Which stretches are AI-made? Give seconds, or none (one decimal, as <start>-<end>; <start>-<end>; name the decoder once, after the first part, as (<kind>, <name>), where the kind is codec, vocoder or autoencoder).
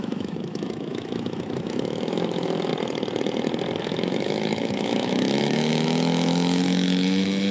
0.0-2.7 (autoencoder, DAC-VAE); 3.8-7.5